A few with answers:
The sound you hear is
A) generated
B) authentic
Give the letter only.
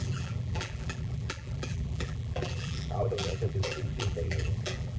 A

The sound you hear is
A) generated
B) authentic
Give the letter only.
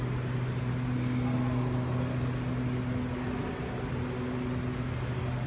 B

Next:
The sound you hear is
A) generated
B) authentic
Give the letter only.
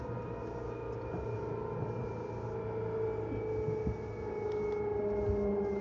B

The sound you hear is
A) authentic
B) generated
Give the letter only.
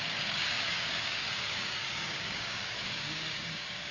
B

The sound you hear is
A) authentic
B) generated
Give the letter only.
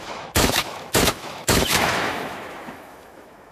B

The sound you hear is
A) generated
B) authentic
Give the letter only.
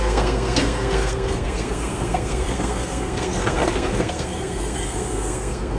A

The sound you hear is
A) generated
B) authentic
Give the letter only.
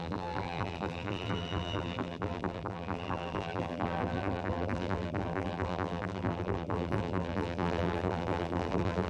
A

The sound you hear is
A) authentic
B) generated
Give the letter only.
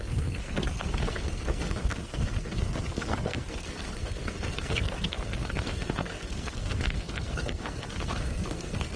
B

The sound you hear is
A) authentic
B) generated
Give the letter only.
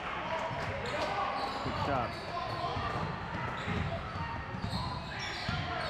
A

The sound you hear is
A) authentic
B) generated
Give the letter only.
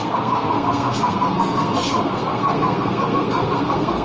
B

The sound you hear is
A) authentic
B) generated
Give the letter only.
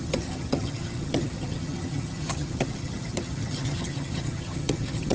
B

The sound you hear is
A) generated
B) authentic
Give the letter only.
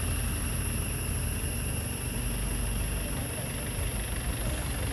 B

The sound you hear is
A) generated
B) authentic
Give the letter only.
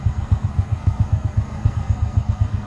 A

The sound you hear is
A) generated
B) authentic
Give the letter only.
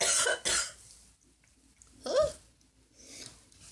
B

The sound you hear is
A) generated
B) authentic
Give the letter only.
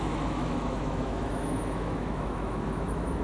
A